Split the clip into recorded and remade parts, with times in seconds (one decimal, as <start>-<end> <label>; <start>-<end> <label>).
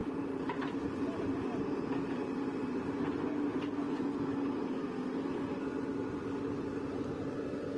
0.0-0.7 remade; 0.7-7.8 recorded